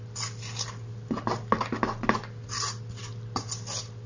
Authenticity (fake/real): real